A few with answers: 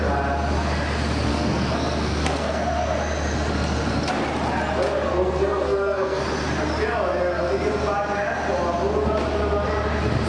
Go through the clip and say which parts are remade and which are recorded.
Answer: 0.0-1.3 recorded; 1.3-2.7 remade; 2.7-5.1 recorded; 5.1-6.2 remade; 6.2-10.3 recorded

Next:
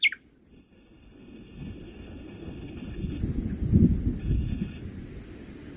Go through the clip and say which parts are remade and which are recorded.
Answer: 0.0-0.5 recorded; 0.5-3.2 remade; 3.2-4.2 recorded; 4.2-4.8 remade; 4.8-5.8 recorded

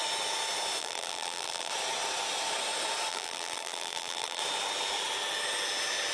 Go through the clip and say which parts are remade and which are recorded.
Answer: 0.0-0.8 recorded; 0.8-1.7 remade; 1.7-3.1 recorded; 3.1-4.4 remade; 4.4-6.1 recorded